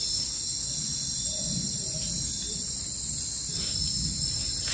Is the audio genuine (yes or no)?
yes